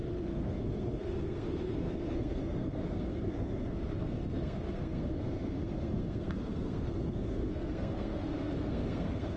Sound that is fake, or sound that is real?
fake